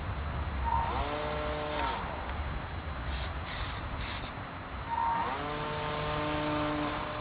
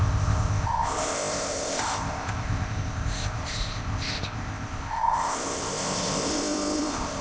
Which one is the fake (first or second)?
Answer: second